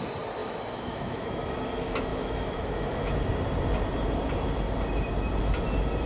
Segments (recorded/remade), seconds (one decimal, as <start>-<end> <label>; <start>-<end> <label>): 0.0-0.4 recorded; 0.4-1.5 remade; 1.5-2.1 recorded; 2.1-3.1 remade; 3.1-6.1 recorded